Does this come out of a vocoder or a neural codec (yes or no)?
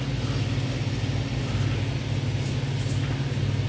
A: no